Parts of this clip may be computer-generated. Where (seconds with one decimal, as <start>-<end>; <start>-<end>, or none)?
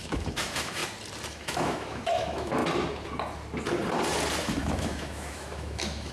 0.0-0.8; 1.3-2.6; 4.4-6.1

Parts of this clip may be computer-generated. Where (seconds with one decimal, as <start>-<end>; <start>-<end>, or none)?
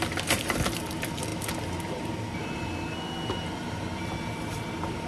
none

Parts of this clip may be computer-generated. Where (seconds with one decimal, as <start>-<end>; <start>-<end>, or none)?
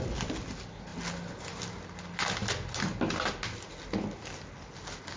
none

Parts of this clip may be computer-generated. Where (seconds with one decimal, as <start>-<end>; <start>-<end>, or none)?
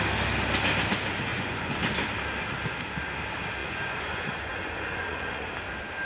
1.3-1.8; 3.6-5.5